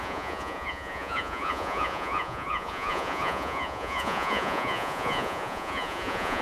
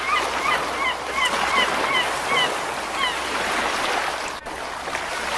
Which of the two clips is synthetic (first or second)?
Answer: first